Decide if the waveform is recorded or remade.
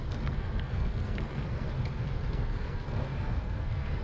remade